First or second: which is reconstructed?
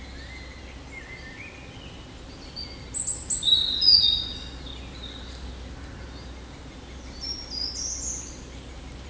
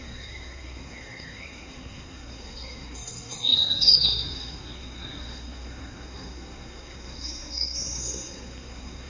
second